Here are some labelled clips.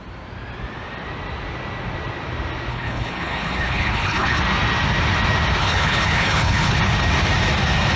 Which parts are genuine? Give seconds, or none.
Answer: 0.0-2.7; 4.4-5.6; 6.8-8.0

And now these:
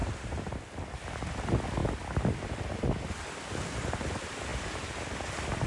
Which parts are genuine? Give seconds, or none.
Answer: 0.0-5.7

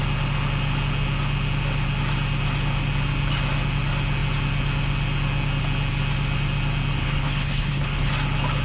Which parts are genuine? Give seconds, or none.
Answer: 0.0-7.0; 8.1-8.6

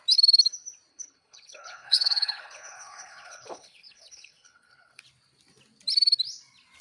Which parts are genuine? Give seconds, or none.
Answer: 0.0-0.9; 5.0-6.8

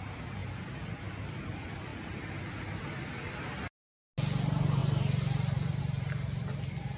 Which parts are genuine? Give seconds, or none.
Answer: 0.0-7.0

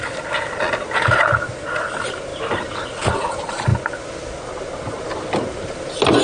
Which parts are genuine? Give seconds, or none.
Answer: 0.0-6.2

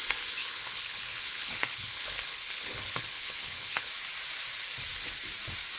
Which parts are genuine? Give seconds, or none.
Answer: 0.0-0.4; 3.9-5.8

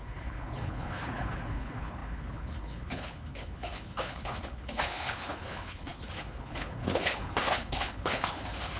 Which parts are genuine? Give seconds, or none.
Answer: none